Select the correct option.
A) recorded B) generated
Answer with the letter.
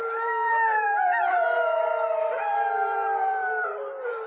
B